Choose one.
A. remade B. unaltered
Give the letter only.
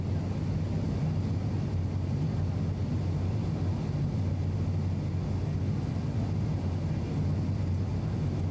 B